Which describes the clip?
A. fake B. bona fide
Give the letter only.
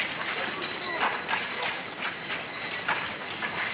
B